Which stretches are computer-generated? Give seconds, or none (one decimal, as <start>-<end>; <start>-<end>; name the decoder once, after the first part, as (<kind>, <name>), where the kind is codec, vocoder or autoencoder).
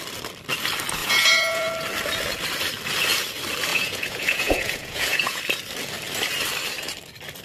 1.0-1.7 (vocoder, Vocos); 3.7-5.4